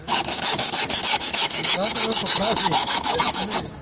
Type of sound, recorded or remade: remade